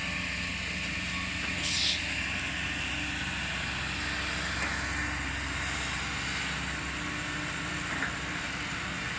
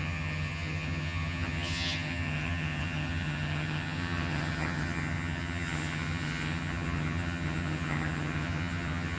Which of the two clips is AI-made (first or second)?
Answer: second